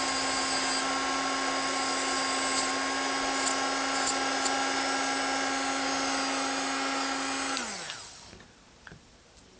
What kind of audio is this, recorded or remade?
recorded